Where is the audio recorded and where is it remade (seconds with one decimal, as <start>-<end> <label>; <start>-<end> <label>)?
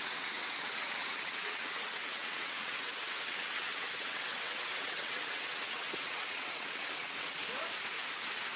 0.0-7.4 remade; 7.4-8.6 recorded